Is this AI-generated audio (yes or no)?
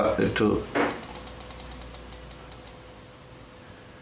no